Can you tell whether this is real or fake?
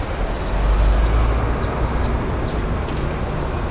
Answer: real